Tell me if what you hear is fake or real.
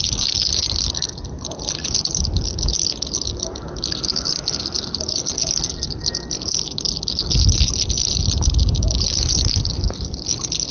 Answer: real